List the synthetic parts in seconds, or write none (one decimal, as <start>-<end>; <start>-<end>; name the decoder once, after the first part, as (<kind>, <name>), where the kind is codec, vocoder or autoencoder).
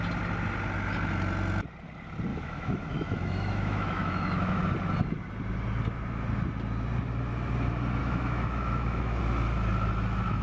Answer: 2.3-4.6 (autoencoder, DAC-VAE); 8.0-9.2